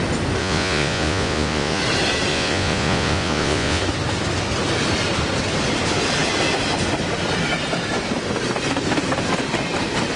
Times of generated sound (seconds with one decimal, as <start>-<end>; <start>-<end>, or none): 0.4-1.8; 2.3-3.8